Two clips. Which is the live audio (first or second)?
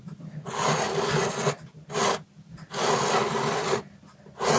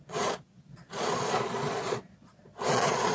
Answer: first